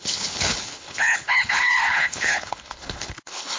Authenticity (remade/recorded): remade